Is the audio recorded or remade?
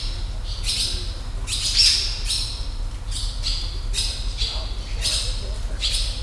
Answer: recorded